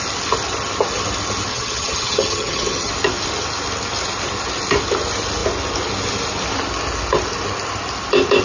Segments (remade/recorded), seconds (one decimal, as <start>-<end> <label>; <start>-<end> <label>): 0.0-1.5 recorded; 1.5-2.9 remade; 2.9-8.4 recorded